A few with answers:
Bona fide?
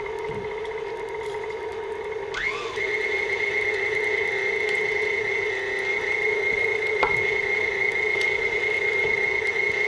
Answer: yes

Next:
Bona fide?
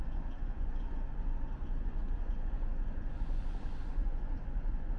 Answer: no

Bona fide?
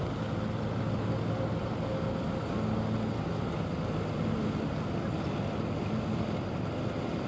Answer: yes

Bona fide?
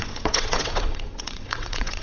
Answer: no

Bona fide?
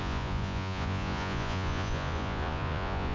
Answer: no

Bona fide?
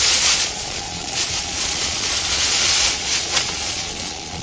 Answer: no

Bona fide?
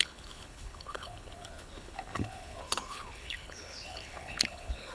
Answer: no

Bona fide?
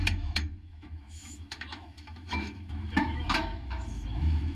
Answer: no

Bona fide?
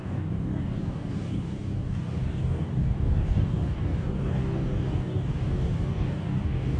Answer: no